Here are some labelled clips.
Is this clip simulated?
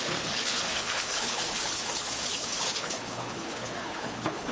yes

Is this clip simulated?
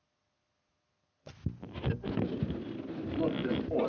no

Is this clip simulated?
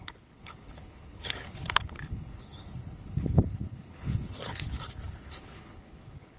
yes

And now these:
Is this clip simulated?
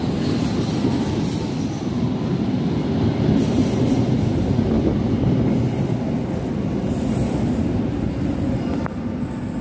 no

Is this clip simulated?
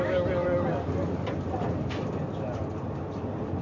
no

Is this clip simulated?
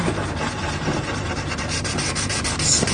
no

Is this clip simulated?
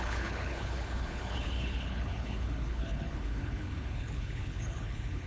yes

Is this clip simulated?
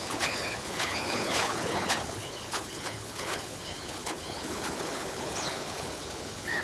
yes